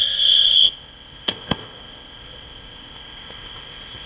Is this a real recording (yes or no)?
no